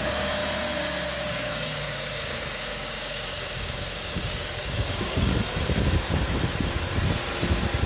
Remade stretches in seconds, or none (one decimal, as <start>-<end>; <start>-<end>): 0.0-0.4; 1.3-5.3